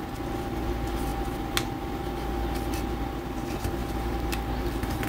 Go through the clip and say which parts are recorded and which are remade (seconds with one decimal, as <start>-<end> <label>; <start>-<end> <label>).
0.0-3.8 recorded; 3.8-4.4 remade; 4.4-5.1 recorded